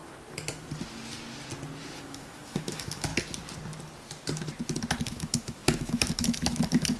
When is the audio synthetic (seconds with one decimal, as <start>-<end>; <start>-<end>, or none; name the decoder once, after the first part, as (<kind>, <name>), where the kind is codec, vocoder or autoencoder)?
2.0-3.1 (autoencoder, DAC-VAE); 5.0-7.0